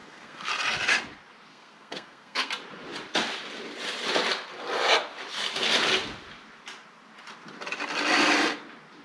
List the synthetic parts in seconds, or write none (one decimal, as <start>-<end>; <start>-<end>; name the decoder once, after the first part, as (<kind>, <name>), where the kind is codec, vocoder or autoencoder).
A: 0.0-0.5 (codec, SNAC); 1.5-2.5